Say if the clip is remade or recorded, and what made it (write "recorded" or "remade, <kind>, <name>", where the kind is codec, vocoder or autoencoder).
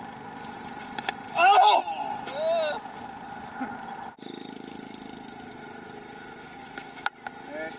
recorded